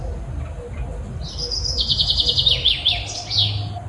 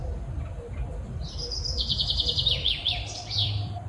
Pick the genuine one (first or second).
first